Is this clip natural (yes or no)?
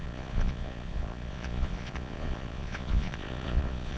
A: no